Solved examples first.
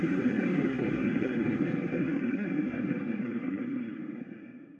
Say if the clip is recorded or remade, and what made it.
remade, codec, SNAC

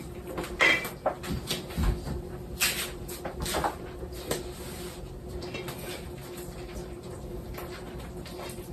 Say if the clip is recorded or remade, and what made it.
recorded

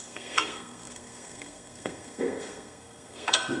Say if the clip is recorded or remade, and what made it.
remade, codec, SNAC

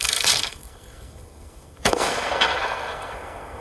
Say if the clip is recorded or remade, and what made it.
remade, codec, SNAC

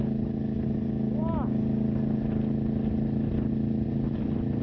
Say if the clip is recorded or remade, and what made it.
recorded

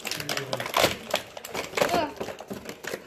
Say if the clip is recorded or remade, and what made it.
recorded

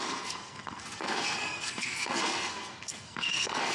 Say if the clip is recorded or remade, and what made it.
remade, codec, SNAC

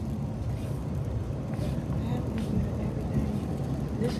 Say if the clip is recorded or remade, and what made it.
recorded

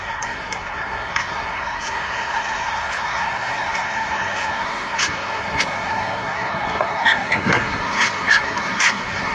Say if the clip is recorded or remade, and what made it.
remade, codec, SNAC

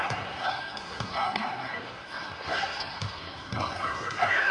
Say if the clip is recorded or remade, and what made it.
remade, codec, SNAC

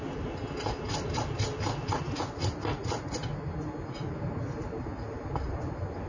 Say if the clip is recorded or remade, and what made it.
recorded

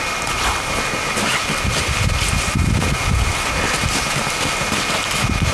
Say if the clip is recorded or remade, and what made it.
recorded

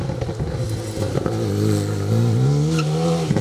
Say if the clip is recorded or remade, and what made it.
recorded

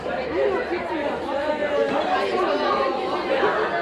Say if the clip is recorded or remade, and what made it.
recorded